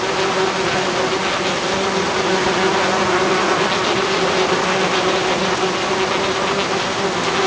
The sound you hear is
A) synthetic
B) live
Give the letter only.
B